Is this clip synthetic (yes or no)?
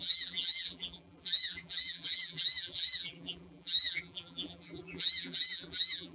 yes